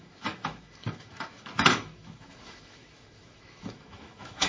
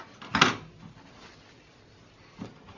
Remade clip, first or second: first